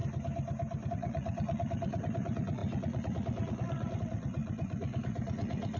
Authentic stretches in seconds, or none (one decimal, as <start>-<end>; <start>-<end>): 0.0-0.9